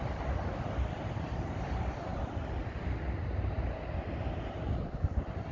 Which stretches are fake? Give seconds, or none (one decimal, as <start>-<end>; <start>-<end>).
none